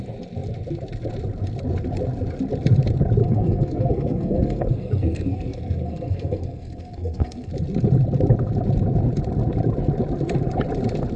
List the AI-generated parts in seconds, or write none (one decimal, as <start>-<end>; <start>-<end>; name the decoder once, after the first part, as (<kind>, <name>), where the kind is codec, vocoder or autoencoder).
3.2-7.5 (codec, SNAC)